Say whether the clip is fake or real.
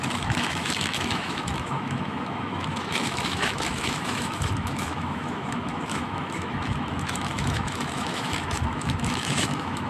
fake